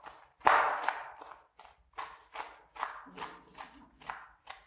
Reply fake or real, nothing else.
real